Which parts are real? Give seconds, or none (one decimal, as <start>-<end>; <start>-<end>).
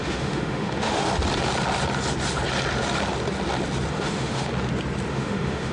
1.1-3.9; 4.5-5.1